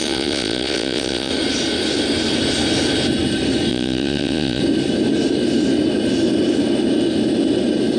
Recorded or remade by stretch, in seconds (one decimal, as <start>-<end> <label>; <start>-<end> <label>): 0.0-1.3 remade; 1.3-3.7 recorded; 3.7-4.6 remade; 4.6-8.0 recorded